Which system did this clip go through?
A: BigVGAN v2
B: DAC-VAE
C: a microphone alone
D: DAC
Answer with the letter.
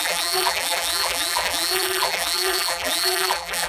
A